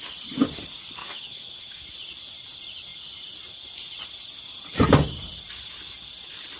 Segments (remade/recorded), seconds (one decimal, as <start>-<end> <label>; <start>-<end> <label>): 0.0-1.0 recorded; 1.0-1.8 remade; 1.8-6.6 recorded